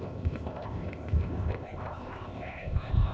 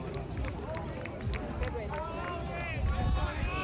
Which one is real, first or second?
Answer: second